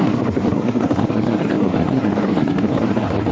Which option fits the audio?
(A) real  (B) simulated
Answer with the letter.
B